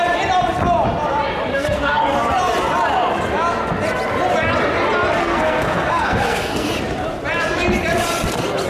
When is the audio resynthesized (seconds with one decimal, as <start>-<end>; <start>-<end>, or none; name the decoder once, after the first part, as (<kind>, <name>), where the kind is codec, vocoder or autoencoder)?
1.5-2.2 (codec, SNAC); 5.2-6.7